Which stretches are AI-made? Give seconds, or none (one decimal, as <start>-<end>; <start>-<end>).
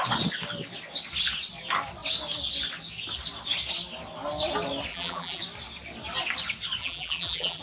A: 4.9-5.4; 6.8-7.6